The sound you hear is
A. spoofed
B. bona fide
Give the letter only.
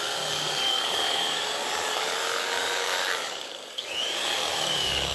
A